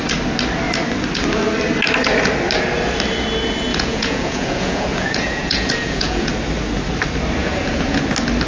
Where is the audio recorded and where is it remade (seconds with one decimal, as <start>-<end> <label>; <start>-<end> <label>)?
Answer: 0.0-3.7 recorded; 3.7-6.3 remade; 6.3-7.4 recorded; 7.4-8.0 remade; 8.0-8.5 recorded